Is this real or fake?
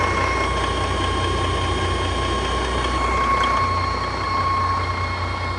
real